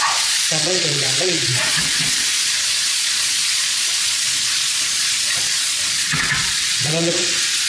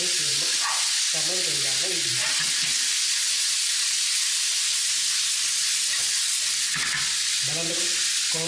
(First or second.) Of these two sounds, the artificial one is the first